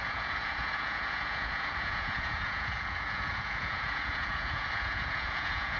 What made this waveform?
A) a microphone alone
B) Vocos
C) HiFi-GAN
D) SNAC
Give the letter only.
B